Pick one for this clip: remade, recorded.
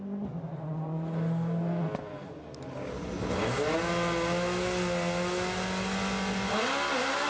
recorded